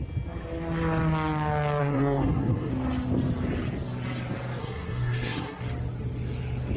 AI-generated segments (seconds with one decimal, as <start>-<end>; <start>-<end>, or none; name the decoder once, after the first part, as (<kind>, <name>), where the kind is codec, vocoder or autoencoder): 1.8-2.7 (codec, SNAC); 4.6-5.6